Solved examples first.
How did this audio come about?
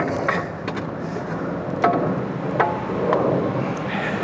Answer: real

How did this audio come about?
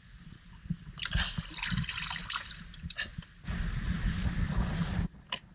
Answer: real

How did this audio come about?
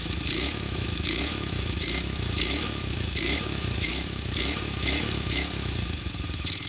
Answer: fake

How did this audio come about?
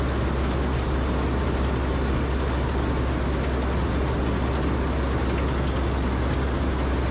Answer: real